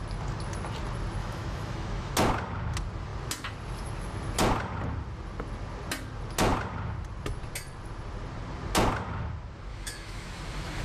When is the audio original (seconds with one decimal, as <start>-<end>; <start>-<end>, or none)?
0.0-1.2; 2.1-9.7; 10.4-10.8